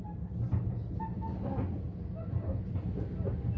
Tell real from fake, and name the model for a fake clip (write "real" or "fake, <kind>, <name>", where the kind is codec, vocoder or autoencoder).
real